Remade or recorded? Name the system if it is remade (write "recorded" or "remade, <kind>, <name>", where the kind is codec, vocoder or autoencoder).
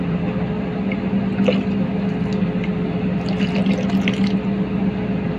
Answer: recorded